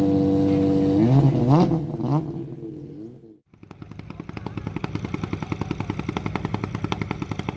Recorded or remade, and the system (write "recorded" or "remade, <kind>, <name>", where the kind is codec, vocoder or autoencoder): recorded